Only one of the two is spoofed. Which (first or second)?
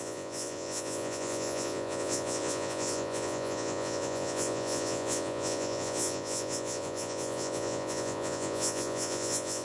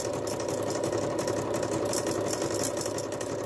first